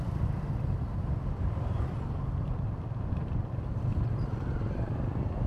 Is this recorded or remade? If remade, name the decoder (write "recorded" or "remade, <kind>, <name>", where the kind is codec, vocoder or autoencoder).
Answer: recorded